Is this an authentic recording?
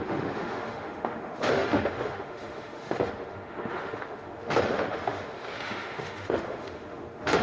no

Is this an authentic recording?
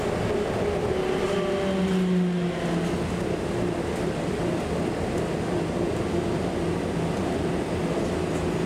yes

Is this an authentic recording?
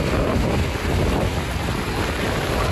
yes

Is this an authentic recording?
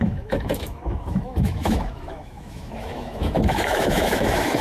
no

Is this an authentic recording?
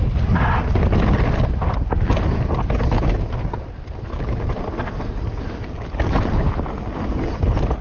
yes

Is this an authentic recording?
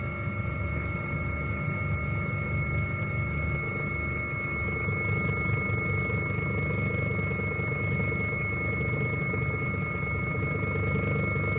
yes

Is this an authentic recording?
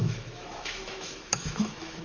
no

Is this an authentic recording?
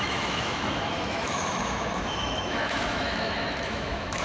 no